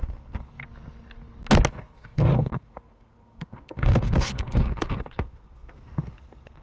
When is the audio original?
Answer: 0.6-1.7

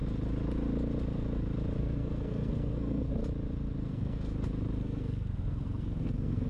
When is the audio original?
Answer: 0.0-1.8; 3.2-3.8; 4.3-4.8

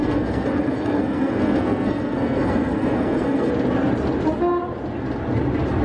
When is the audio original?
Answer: 3.5-5.8

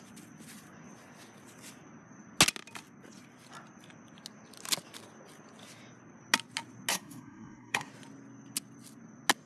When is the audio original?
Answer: 0.0-6.9; 7.9-9.5

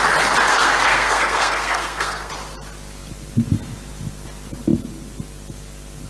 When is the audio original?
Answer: 0.0-0.5; 2.3-6.1

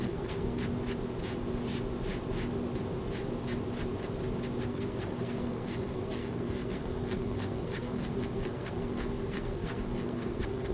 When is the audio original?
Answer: 0.6-4.6

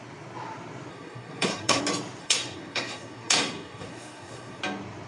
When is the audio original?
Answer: 0.0-0.9; 1.8-2.2; 4.6-5.1

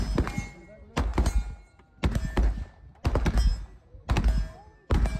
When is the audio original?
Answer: 0.0-5.2